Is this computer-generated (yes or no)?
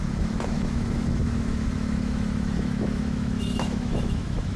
yes